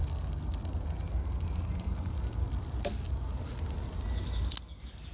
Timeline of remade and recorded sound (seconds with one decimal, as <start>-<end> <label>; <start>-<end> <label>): 0.0-5.1 recorded